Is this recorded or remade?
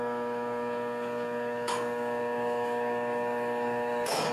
remade